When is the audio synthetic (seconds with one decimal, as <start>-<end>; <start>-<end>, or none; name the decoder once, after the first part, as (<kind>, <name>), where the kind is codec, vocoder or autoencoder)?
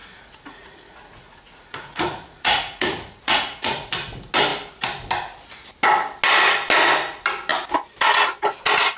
0.0-3.9 (vocoder, Vocos)